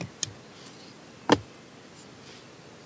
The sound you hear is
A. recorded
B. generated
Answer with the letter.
A